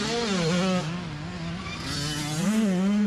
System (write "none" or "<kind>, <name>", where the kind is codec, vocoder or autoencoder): none